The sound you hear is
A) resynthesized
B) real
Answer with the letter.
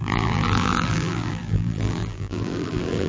A